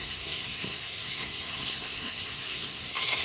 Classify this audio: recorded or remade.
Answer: remade